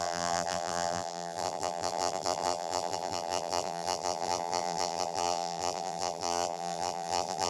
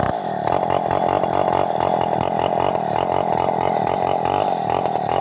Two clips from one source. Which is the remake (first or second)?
first